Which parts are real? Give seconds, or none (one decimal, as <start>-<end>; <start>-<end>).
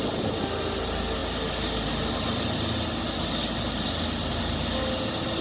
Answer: 0.0-5.4